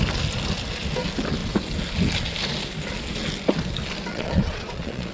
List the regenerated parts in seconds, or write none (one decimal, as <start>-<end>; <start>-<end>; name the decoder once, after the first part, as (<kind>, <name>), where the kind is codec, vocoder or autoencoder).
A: 4.1-5.1 (vocoder, Vocos)